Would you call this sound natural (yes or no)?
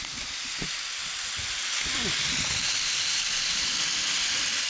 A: yes